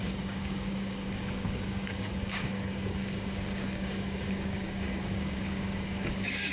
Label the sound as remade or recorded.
remade